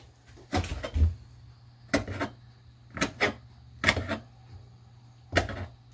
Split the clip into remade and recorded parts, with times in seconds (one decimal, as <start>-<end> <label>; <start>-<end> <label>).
0.0-5.9 recorded